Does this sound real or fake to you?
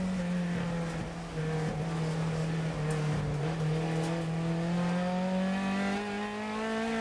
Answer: real